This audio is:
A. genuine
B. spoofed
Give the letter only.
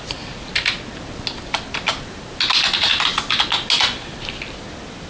A